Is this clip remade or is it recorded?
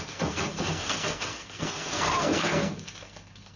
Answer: remade